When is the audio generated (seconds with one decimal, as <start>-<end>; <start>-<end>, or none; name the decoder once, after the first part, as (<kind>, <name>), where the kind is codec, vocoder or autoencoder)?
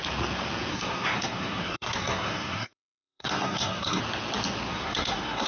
0.7-4.0 (codec, SNAC); 4.7-5.5